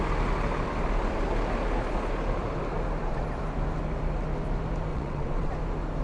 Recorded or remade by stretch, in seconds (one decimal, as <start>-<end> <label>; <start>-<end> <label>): 0.0-4.9 recorded; 4.9-5.5 remade; 5.5-6.0 recorded